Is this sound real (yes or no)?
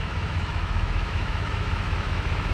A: no